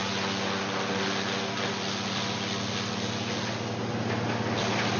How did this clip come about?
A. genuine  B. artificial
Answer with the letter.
A